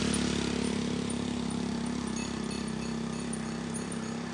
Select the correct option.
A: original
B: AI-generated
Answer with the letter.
A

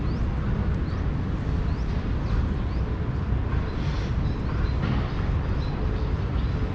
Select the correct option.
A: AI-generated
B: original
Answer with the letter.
B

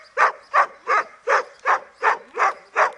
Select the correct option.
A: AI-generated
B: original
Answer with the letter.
B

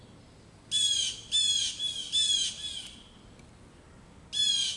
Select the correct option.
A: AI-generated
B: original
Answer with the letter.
B